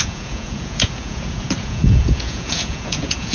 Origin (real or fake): fake